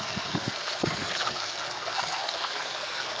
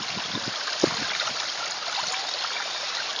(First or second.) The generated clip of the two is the first